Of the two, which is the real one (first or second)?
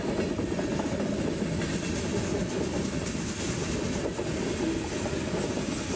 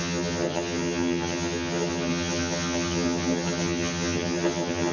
first